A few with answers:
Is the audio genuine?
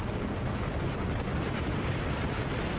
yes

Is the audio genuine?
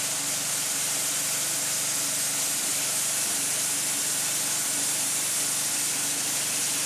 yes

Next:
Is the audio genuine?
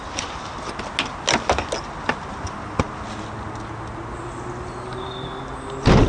yes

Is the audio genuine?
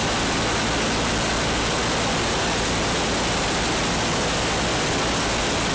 yes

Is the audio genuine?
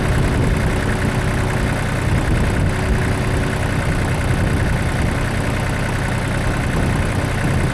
yes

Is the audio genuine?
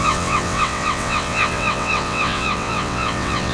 no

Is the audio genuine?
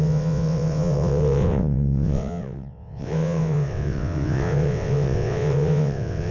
no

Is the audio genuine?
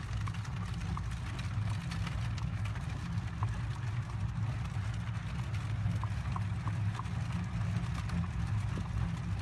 yes